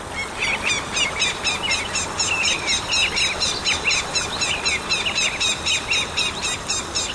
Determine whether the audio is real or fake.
real